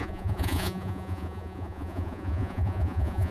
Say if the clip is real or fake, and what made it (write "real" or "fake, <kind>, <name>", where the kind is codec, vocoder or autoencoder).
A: fake, vocoder, Vocos